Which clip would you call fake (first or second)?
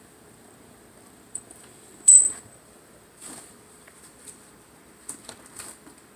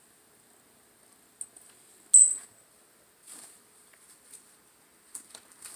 first